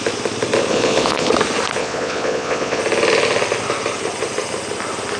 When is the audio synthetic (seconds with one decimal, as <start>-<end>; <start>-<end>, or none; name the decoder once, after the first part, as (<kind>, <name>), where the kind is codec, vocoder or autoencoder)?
0.7-1.3 (vocoder, Vocos); 1.8-2.8